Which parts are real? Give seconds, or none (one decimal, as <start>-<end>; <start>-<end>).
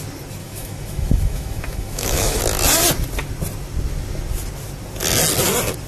0.0-0.4; 2.4-5.9